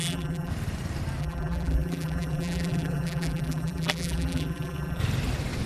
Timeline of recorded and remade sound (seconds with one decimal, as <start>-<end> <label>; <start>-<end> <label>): 0.0-0.5 remade; 0.5-1.2 recorded; 1.2-5.0 remade; 5.0-5.7 recorded